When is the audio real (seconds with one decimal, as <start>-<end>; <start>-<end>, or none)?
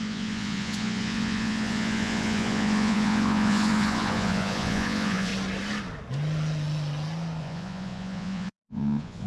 5.3-7.4